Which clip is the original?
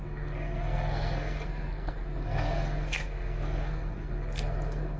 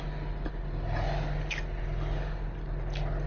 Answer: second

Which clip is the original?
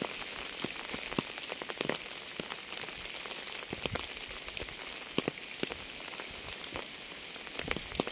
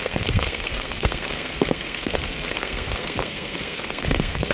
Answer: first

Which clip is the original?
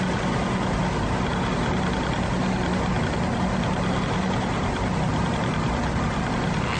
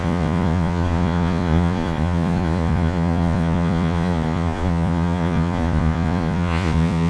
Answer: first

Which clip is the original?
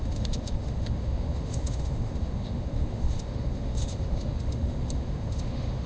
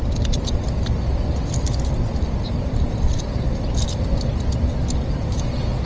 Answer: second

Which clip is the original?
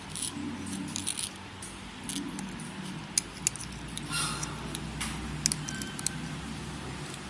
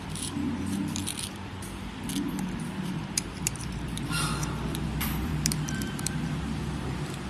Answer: first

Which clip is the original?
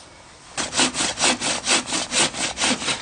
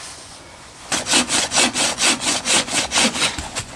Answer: first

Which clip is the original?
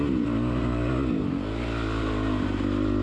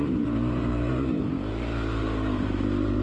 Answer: first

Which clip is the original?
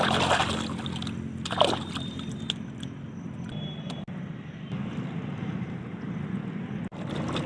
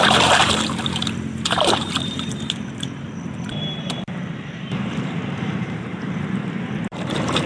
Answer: first